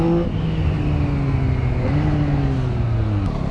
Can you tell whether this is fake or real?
real